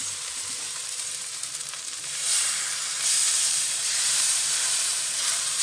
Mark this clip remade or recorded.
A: remade